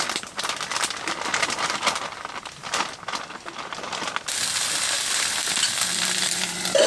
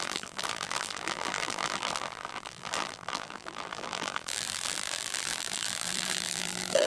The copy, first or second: second